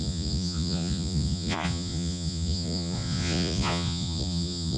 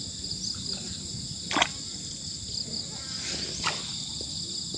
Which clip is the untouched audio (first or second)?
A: second